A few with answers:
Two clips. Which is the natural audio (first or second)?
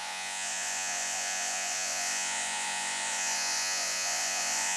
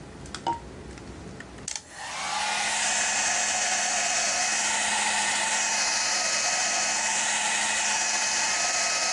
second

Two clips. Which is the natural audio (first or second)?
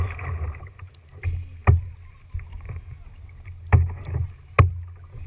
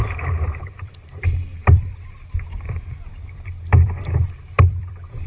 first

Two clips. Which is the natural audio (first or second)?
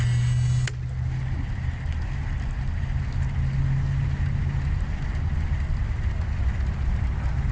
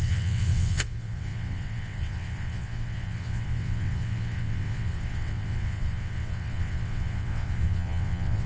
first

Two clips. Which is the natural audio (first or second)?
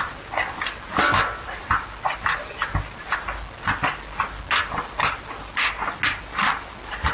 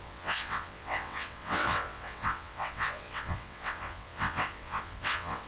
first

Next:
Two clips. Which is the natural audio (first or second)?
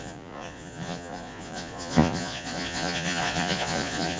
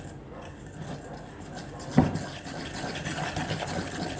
second